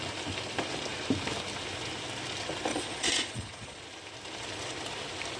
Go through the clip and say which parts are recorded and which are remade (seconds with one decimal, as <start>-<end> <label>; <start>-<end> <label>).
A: 0.0-2.7 recorded; 2.7-3.8 remade; 3.8-5.4 recorded